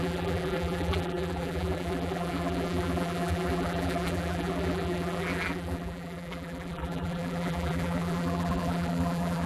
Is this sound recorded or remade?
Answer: remade